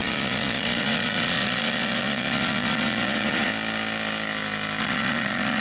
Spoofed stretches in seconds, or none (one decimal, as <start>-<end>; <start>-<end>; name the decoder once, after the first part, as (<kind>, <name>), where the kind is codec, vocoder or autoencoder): 0.0-3.5 (vocoder, Vocos); 4.8-5.6